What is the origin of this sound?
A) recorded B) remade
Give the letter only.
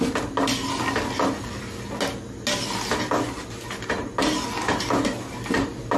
A